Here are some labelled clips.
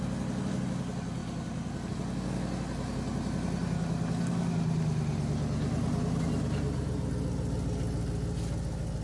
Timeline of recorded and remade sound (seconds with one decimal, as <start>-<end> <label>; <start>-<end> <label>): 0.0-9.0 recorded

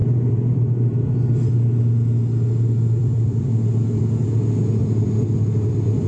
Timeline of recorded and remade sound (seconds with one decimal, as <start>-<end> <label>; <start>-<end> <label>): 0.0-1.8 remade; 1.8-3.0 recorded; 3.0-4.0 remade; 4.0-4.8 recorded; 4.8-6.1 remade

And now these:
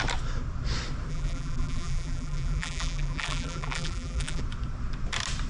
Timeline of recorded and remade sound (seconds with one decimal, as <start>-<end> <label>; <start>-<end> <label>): 0.0-1.1 recorded; 1.1-4.4 remade; 4.4-5.5 recorded

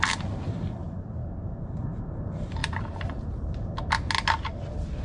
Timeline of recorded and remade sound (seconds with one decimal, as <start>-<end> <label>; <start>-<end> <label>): 0.0-1.2 recorded; 1.2-2.0 remade; 2.0-2.6 recorded; 2.6-3.5 remade; 3.5-5.0 recorded

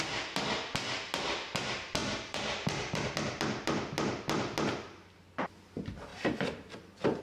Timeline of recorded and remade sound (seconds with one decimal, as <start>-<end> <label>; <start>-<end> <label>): 0.0-2.0 recorded; 2.0-3.1 remade; 3.1-6.1 recorded; 6.1-7.2 remade

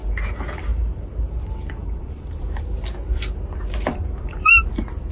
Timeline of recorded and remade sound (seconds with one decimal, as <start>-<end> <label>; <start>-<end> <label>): 0.0-0.7 recorded; 0.7-1.4 remade; 1.4-1.8 recorded; 1.8-2.6 remade; 2.6-3.9 recorded; 3.9-4.5 remade; 4.5-5.1 recorded

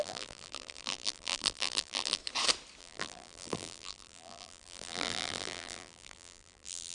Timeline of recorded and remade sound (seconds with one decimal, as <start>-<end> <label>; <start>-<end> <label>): 0.0-2.2 remade; 2.2-2.8 recorded; 2.8-6.9 remade